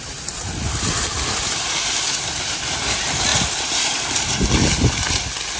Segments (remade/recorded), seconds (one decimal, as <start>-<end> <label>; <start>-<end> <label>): 0.0-5.6 recorded